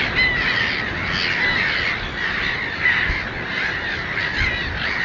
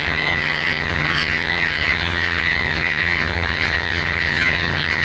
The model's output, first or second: second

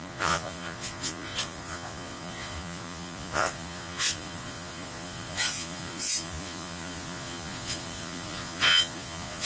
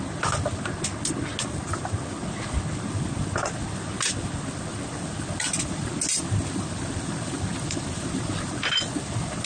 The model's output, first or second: first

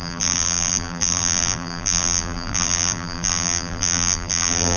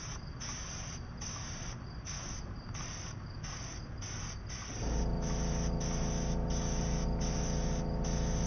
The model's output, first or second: first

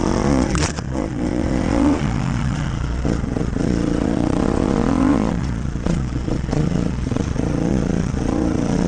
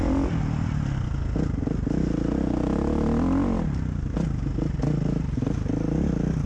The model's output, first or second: first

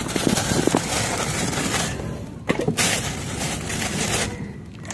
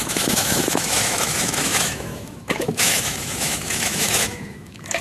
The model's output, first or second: second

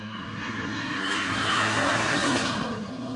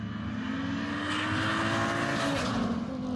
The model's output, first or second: first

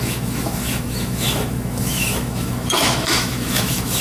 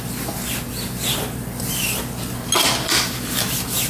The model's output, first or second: first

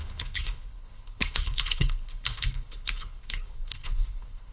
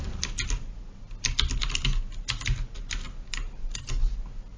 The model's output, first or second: first